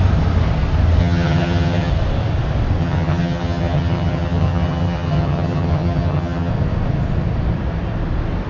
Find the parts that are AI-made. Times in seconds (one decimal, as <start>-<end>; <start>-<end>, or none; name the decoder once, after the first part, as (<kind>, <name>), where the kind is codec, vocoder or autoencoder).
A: 1.0-1.9 (vocoder, HiFi-GAN); 2.8-6.5

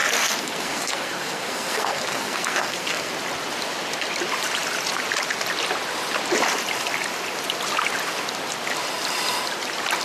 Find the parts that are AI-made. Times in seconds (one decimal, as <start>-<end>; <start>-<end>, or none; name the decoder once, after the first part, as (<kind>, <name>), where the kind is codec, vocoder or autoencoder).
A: 0.0-3.1 (codec, SNAC)

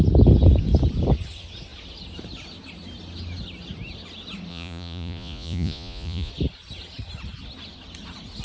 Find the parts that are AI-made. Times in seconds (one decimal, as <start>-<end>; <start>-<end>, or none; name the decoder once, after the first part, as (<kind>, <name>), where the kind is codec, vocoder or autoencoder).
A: 4.5-6.3 (vocoder, Vocos)

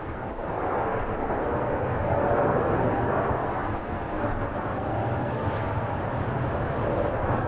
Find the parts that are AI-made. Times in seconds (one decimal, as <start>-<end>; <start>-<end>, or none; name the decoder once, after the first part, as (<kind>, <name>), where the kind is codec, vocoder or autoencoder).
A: 0.0-6.0 (codec, SNAC); 7.1-7.5